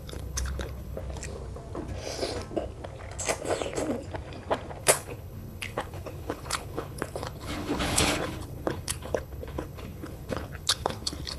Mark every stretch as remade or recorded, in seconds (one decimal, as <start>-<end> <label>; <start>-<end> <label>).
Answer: 0.0-1.0 remade; 1.0-4.8 recorded; 4.8-11.4 remade